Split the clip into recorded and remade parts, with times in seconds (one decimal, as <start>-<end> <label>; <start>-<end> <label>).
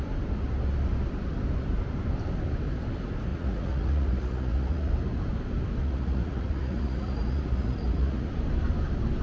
0.0-3.3 recorded; 3.3-4.9 remade; 4.9-5.8 recorded; 5.8-8.3 remade; 8.3-9.2 recorded